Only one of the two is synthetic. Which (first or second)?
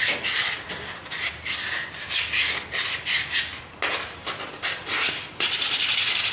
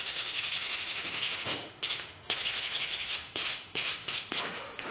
second